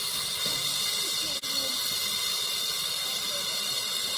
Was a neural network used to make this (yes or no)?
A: no